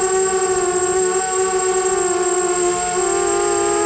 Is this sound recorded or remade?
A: recorded